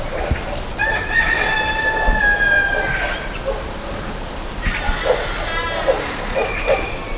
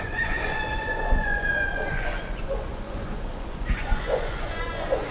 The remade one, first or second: second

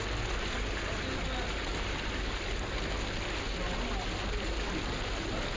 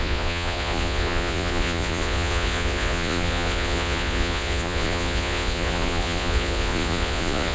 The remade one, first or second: second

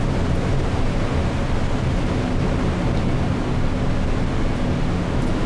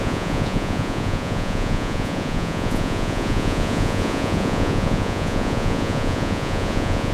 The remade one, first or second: second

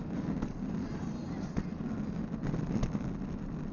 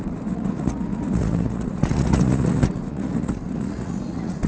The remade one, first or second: second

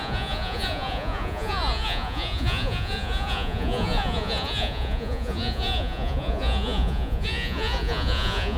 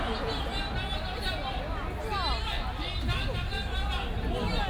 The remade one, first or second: first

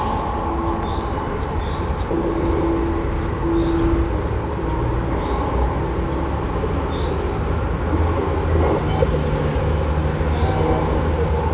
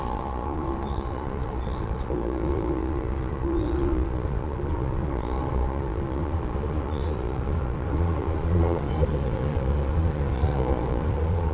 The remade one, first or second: second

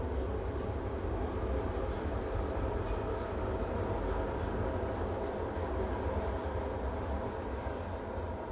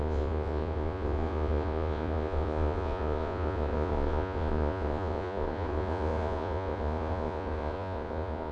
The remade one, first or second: second